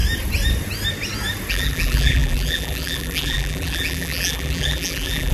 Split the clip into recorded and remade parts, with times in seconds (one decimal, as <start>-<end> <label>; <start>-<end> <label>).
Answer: 0.0-1.5 recorded; 1.5-5.3 remade